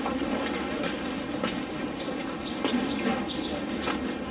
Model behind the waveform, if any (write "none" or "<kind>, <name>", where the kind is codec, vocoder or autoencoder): none